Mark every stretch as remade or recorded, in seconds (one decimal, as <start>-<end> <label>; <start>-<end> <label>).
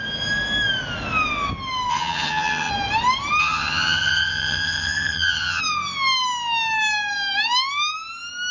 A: 0.0-1.9 recorded; 1.9-2.7 remade; 2.7-3.4 recorded; 3.4-5.6 remade; 5.6-8.5 recorded